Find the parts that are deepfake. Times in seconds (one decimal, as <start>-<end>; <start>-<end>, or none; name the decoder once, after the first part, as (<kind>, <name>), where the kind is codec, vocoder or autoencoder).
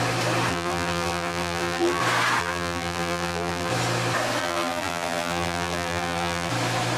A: 0.5-2.0 (vocoder, BigVGAN v2); 2.4-3.7; 4.4-6.5